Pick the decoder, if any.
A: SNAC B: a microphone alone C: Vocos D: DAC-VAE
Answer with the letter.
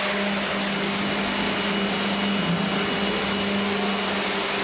B